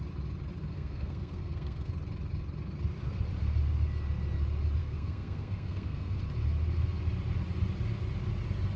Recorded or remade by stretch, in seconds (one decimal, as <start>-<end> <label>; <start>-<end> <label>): 0.0-0.6 recorded; 0.6-1.9 remade; 1.9-4.8 recorded; 4.8-6.2 remade; 6.2-8.8 recorded